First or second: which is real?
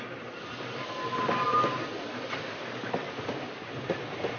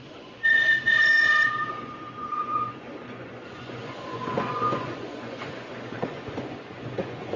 first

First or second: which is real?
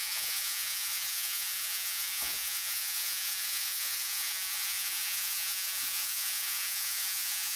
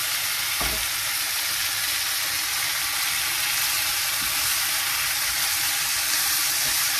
second